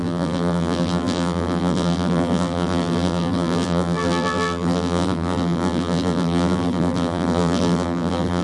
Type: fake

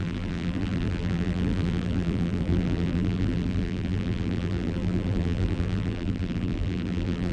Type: fake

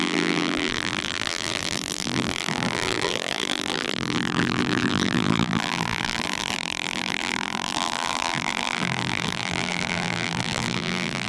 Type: fake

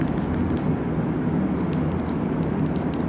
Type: real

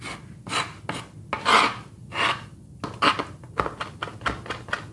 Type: real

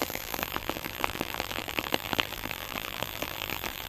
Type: fake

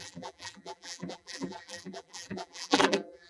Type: fake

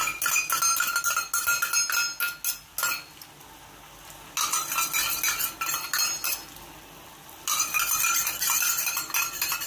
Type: real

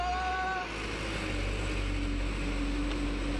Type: real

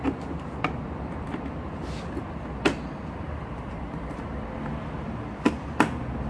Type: fake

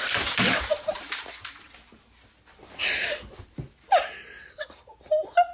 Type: real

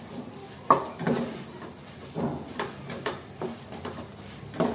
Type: fake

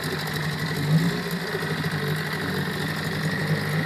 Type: real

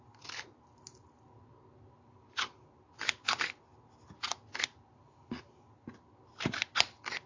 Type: real